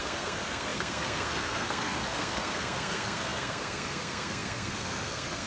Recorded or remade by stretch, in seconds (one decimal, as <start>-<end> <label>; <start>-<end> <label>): 0.0-5.5 remade